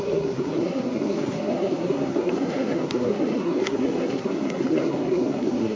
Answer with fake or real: fake